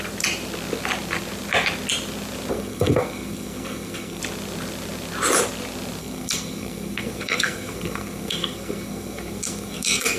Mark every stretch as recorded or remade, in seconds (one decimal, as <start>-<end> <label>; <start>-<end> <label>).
0.0-2.5 recorded; 2.5-4.2 remade; 4.2-6.0 recorded; 6.0-10.2 remade

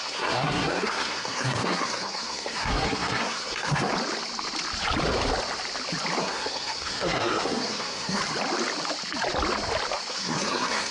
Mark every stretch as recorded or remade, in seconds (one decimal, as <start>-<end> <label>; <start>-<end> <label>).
0.0-3.9 remade; 3.9-6.2 recorded; 6.2-8.2 remade; 8.2-10.1 recorded; 10.1-10.9 remade

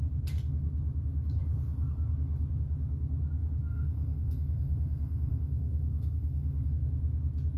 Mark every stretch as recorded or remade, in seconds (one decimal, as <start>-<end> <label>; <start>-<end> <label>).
0.0-3.7 recorded; 3.7-6.7 remade; 6.7-7.6 recorded